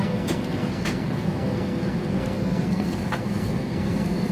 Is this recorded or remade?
remade